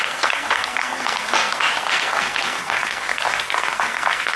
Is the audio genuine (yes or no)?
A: no